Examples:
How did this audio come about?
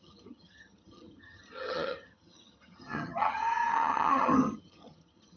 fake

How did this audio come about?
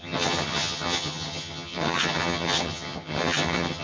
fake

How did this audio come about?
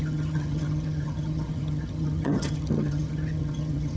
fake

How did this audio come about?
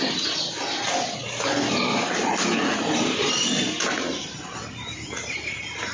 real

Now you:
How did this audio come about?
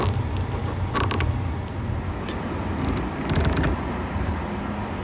real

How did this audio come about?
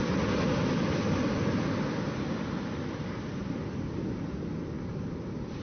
real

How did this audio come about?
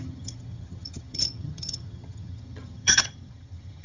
fake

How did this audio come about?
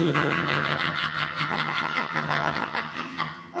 fake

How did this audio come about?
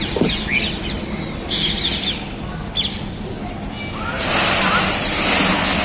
real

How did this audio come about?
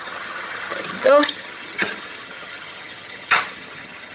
fake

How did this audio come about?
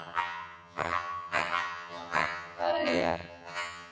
fake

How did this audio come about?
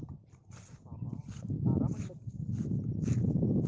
real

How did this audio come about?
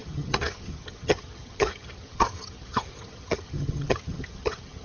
fake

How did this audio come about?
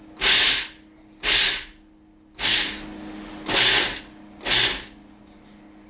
real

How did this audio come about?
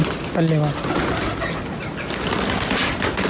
real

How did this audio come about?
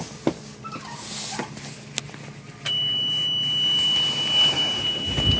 real